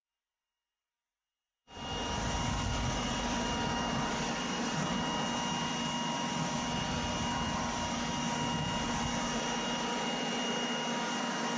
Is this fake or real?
real